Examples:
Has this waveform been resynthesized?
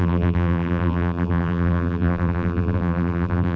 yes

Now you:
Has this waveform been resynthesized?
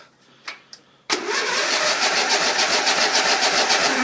yes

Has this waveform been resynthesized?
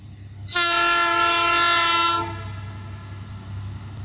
no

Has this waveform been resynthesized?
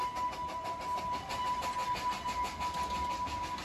no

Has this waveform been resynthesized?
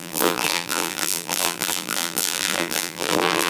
yes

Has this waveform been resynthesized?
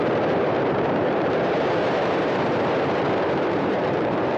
yes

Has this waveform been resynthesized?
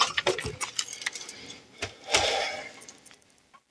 yes